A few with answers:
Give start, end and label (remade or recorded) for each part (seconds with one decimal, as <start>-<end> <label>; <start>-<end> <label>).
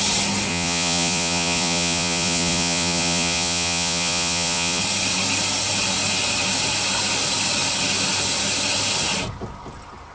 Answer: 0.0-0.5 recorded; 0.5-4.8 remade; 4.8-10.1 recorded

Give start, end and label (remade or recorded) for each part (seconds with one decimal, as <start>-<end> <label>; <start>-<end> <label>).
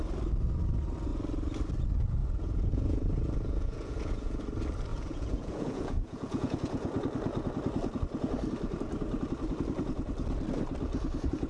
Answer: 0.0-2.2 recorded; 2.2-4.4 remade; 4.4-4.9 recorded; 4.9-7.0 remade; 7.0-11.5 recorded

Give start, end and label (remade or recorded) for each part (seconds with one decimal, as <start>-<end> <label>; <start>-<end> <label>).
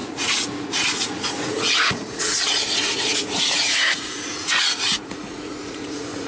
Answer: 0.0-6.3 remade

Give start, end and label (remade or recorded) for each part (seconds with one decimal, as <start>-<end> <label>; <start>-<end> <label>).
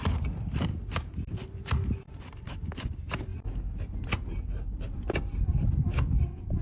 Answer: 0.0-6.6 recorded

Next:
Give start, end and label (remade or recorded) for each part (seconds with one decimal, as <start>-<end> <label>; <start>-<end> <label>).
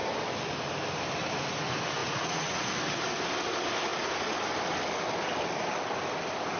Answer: 0.0-2.0 recorded; 2.0-2.6 remade; 2.6-6.6 recorded